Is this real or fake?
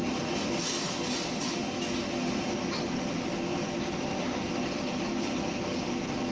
real